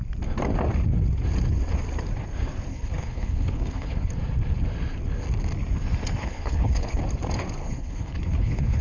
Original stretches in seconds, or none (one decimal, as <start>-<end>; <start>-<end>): 0.0-2.7; 4.1-6.2; 7.0-7.6